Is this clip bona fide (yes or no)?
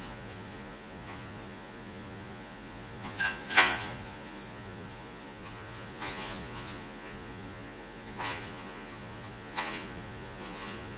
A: no